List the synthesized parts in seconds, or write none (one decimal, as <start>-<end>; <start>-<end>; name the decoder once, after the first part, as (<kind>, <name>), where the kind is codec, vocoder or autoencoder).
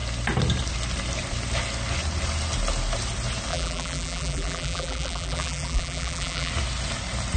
3.5-6.5 (vocoder, BigVGAN v2)